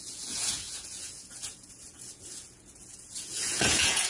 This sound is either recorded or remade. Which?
remade